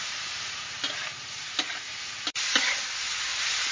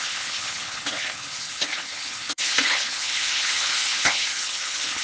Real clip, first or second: first